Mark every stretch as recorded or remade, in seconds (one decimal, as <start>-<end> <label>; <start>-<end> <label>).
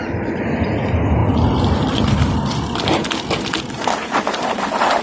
0.0-5.0 recorded